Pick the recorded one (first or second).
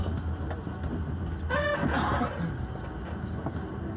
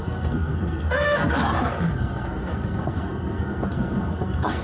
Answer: first